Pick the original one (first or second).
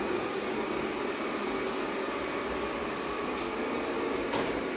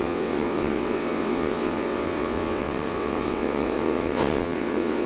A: first